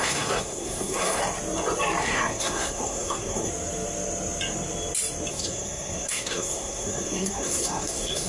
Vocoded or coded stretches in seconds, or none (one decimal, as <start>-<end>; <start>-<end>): 0.0-1.2; 2.0-3.5; 5.3-8.3